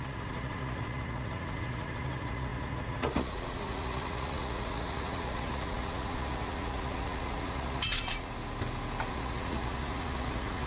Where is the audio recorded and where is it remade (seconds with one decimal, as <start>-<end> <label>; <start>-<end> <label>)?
0.0-8.3 remade; 8.3-9.1 recorded; 9.1-10.7 remade